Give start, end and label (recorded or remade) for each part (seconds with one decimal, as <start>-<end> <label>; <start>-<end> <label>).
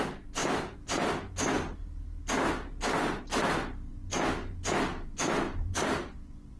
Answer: 0.0-6.6 recorded